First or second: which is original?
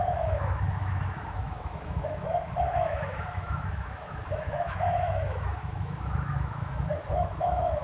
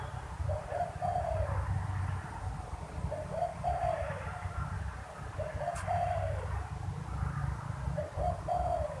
second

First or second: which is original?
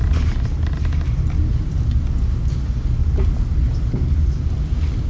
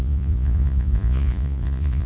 first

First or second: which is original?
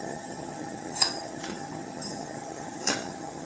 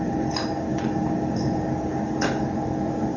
second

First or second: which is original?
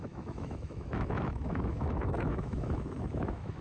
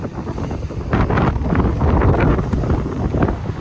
second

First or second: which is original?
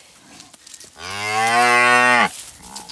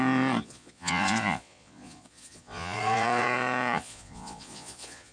first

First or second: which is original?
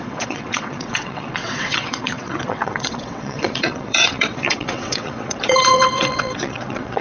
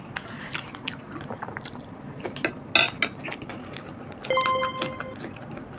second